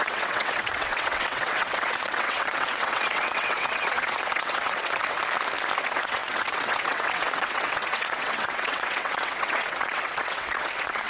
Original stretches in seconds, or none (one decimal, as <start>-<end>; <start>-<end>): 5.2-5.8